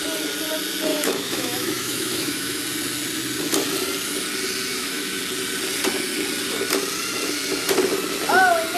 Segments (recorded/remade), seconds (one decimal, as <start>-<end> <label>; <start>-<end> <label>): 0.0-0.9 recorded; 0.9-2.6 remade; 2.6-4.7 recorded; 4.7-5.2 remade; 5.2-8.8 recorded